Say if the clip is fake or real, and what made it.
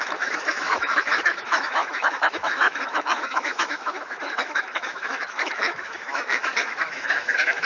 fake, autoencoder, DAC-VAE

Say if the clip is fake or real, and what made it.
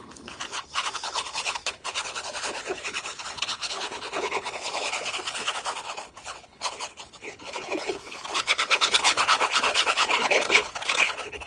fake, codec, HILCodec